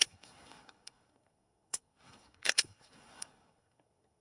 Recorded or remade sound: remade